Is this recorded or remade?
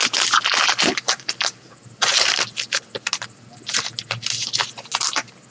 recorded